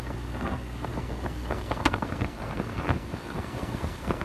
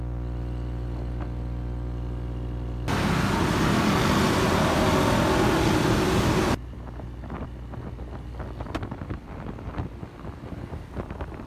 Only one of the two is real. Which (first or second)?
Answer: second